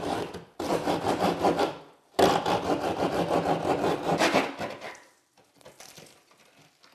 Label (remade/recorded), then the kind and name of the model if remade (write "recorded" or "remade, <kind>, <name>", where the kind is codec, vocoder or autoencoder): recorded